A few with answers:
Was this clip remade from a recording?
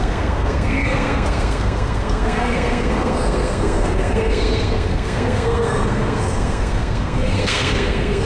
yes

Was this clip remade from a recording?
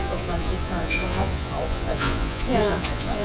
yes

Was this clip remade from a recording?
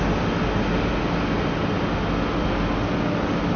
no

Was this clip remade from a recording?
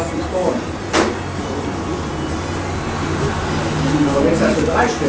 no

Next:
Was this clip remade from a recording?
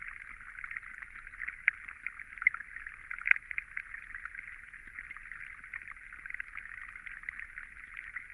no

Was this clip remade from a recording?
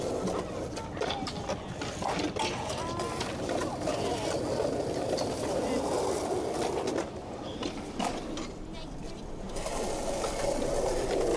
no